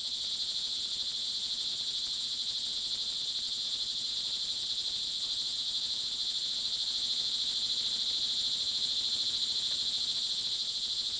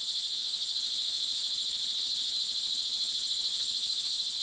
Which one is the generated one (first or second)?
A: second